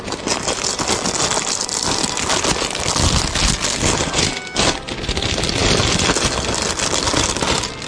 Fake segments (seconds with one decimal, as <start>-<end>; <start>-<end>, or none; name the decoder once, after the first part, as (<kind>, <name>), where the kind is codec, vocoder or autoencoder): none